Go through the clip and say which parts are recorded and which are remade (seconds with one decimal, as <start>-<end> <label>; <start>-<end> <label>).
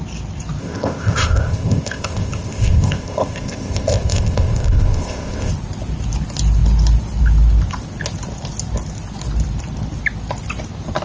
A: 0.0-0.6 recorded; 0.6-5.5 remade; 5.5-11.0 recorded